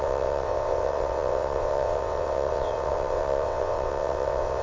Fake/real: fake